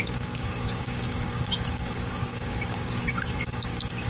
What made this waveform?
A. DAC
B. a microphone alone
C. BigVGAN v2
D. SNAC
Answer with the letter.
A